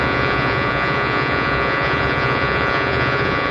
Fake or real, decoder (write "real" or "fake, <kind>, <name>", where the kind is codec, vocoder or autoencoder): fake, vocoder, Vocos